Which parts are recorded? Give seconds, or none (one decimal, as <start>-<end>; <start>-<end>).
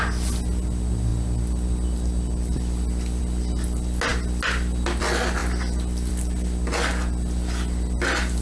0.0-8.4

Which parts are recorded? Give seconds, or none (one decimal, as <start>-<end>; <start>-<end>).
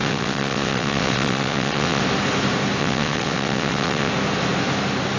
2.0-2.8; 4.1-5.2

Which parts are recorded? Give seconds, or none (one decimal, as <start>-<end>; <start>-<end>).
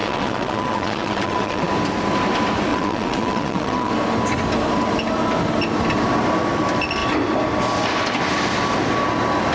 1.7-2.7; 3.9-9.5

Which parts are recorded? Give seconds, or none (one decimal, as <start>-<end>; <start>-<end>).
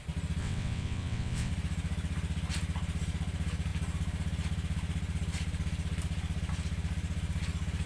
0.0-0.4; 1.5-7.9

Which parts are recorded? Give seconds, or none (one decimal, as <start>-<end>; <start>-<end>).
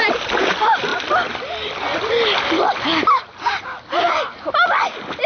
0.0-5.3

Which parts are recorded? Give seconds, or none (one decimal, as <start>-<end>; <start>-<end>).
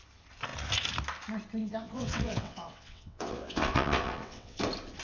0.0-1.6; 4.6-5.0